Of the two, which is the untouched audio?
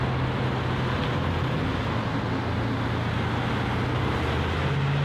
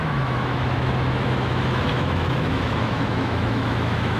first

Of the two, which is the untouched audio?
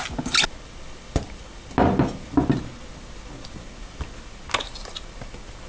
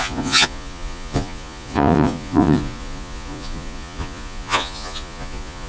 first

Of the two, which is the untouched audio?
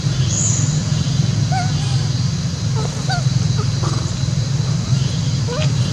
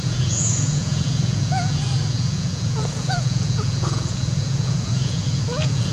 first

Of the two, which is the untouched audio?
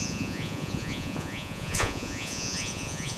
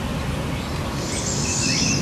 second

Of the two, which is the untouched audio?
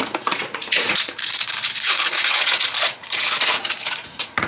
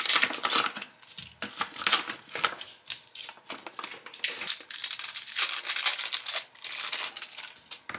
second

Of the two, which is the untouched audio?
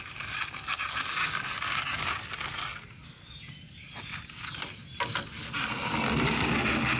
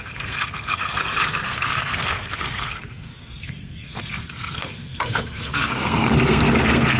first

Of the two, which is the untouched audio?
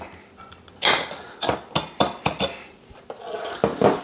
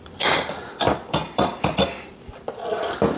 first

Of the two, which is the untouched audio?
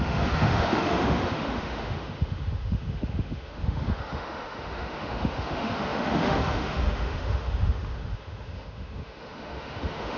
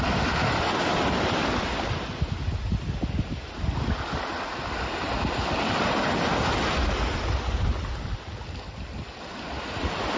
second